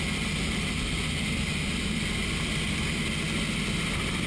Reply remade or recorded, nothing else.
recorded